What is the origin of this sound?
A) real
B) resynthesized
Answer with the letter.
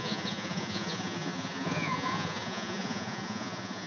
B